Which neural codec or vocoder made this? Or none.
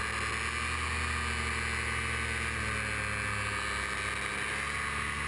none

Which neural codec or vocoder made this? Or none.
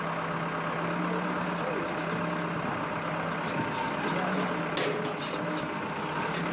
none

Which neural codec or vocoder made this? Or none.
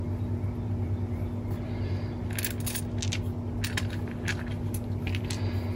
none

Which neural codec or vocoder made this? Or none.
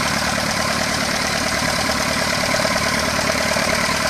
vocoder, BigVGAN v2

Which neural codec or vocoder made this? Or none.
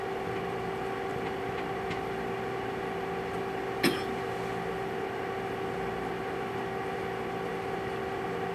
none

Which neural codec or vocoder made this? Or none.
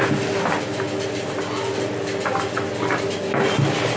none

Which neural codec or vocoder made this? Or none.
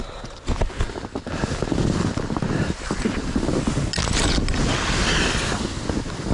none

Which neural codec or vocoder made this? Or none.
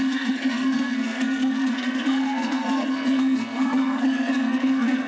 codec, SNAC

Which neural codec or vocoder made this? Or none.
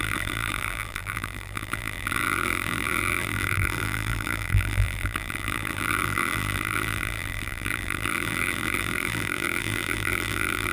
vocoder, BigVGAN v2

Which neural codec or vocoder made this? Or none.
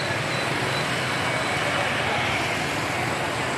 none